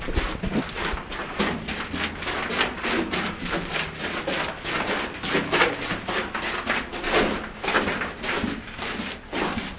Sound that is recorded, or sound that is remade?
recorded